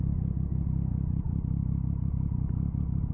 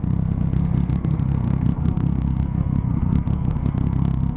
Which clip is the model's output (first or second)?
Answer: second